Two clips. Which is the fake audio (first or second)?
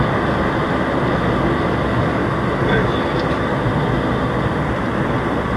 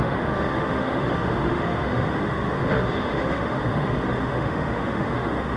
second